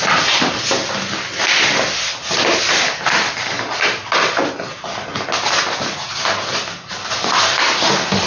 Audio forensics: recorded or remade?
recorded